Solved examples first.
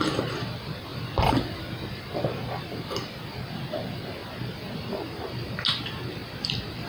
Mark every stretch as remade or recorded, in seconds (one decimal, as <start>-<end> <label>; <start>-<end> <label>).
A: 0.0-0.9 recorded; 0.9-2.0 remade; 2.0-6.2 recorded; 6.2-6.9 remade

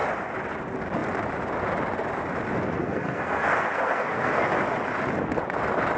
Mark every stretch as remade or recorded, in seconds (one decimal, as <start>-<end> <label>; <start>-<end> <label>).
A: 0.0-2.8 recorded; 2.8-4.5 remade; 4.5-6.0 recorded

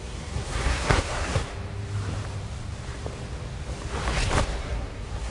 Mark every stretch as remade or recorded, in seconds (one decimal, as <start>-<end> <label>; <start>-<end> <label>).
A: 0.0-1.4 remade; 1.4-4.6 recorded; 4.6-5.3 remade